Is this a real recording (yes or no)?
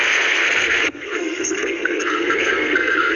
no